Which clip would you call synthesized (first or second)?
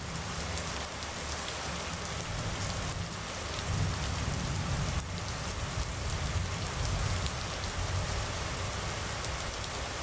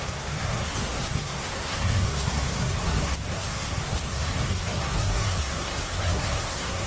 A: second